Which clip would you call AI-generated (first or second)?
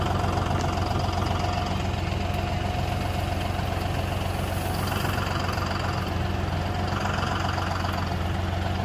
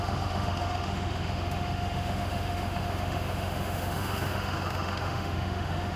second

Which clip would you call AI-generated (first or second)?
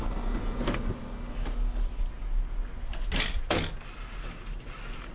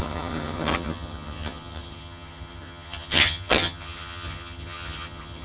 second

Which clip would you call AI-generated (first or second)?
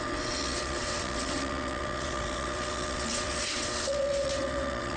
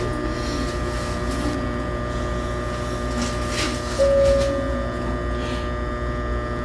first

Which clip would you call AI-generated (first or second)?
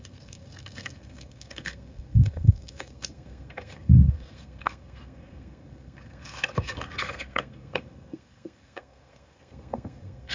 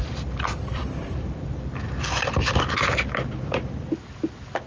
first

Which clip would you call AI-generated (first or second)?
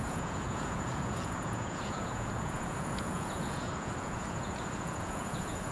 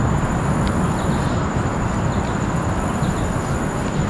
first